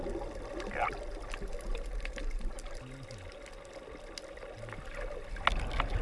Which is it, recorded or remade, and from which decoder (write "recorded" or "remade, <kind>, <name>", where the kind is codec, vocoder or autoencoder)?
recorded